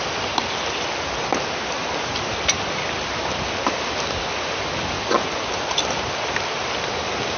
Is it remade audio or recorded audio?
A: recorded